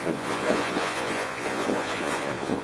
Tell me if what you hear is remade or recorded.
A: remade